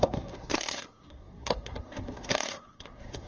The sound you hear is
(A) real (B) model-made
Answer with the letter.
B